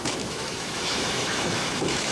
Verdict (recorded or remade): remade